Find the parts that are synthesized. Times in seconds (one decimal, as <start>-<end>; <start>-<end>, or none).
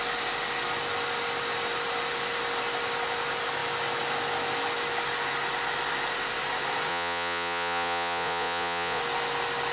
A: 6.9-9.0